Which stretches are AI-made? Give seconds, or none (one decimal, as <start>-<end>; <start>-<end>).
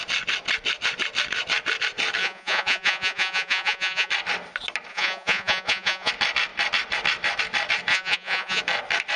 2.2-4.1; 4.9-6.1; 7.9-8.6